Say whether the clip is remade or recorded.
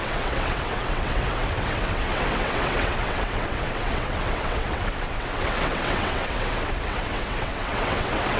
remade